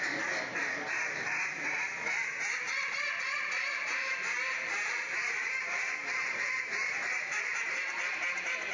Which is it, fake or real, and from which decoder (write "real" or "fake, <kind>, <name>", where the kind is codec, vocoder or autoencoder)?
fake, vocoder, BigVGAN v2